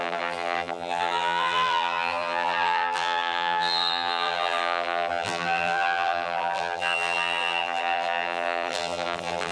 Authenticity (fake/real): fake